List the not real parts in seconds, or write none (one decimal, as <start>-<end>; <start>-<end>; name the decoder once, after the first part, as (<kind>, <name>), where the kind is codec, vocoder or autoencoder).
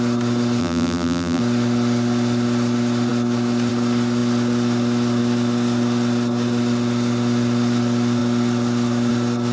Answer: 0.6-1.4 (vocoder, BigVGAN v2)